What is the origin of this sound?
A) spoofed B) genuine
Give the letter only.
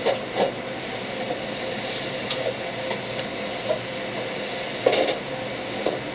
B